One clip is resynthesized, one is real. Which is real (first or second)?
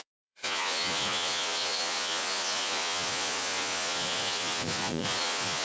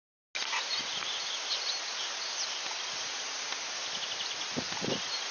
second